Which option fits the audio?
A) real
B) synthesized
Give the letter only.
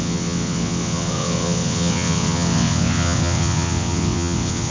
B